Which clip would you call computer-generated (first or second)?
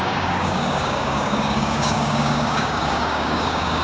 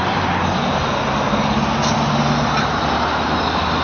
first